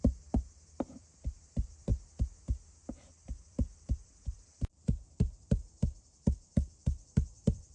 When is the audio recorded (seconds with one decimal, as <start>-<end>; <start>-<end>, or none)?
1.9-3.4